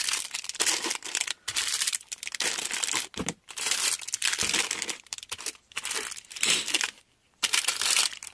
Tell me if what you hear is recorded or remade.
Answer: remade